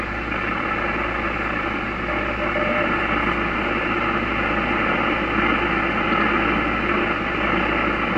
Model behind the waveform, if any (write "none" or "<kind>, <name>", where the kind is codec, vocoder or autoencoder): none